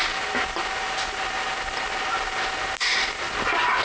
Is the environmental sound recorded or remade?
recorded